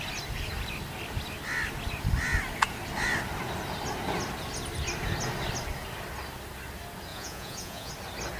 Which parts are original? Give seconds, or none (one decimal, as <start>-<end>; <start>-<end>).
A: 0.0-7.1; 7.9-8.4